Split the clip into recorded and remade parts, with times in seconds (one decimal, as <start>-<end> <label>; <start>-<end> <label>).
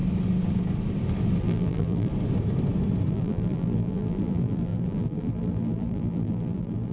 0.0-1.4 recorded; 1.4-2.1 remade; 2.1-3.1 recorded; 3.1-6.9 remade